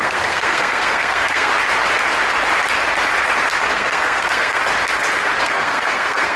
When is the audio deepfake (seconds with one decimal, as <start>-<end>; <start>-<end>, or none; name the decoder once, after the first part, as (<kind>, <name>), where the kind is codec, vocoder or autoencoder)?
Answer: 0.0-1.5 (codec, SNAC); 3.7-4.6; 5.4-6.4